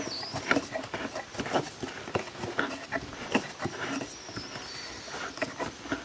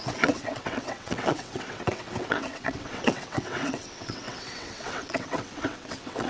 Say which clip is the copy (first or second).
second